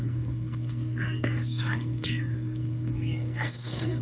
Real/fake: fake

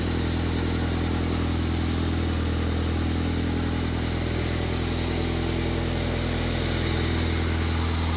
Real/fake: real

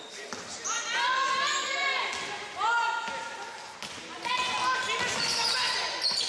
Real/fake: real